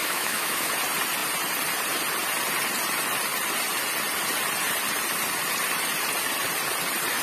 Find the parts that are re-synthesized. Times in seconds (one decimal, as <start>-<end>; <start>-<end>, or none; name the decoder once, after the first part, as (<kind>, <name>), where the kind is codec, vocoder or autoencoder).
0.0-0.7 (autoencoder, DAC-VAE)